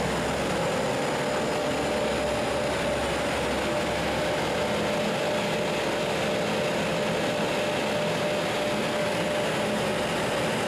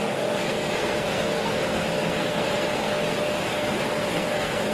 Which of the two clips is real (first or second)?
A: first